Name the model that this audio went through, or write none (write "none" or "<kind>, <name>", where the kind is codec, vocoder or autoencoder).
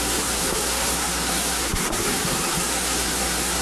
codec, SNAC